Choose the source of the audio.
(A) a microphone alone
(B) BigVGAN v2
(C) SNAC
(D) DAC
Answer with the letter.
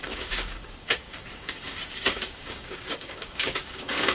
D